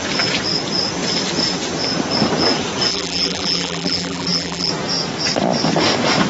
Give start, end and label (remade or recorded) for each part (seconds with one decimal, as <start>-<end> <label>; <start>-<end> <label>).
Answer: 0.0-2.9 recorded; 2.9-4.7 remade; 4.7-6.3 recorded